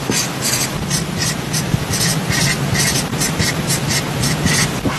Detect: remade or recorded recorded